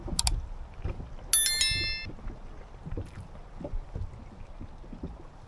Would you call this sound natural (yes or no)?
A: yes